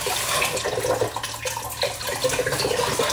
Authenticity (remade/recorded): recorded